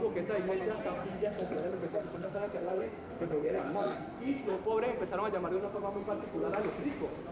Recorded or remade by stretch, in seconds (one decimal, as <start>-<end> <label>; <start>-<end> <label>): 0.0-1.0 recorded; 1.0-4.6 remade; 4.6-7.3 recorded